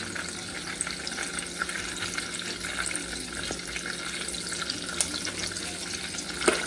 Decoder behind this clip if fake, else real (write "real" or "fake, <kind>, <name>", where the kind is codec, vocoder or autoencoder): real